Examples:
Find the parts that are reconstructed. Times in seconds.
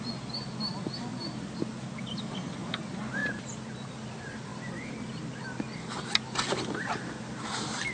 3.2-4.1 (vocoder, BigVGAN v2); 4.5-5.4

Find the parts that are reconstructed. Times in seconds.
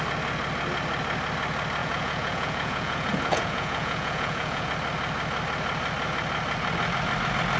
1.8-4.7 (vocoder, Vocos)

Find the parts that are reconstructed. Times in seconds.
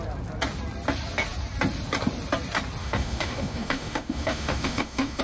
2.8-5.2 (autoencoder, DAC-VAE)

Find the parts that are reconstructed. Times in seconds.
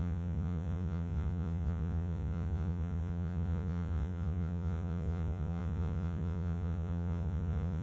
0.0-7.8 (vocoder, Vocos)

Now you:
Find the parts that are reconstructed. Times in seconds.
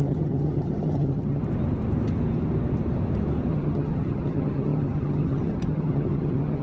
0.0-1.4 (vocoder, HiFi-GAN); 3.5-6.6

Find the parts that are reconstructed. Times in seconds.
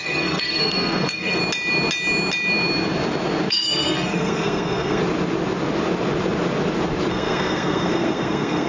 0.0-1.4 (codec, SNAC); 3.5-5.0; 7.1-8.7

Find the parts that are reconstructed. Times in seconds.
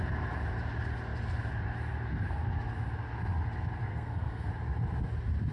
3.9-4.5 (codec, SNAC)